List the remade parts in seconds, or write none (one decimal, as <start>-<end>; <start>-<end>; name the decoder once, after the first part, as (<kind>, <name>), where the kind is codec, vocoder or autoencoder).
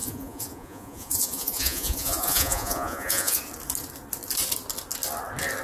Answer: 0.0-3.4 (vocoder, Vocos)